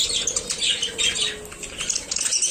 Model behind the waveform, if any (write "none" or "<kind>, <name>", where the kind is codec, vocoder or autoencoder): none